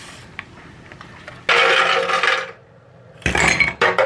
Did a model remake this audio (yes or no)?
no